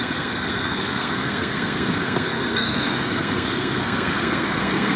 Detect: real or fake fake